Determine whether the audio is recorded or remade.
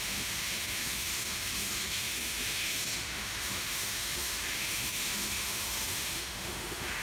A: remade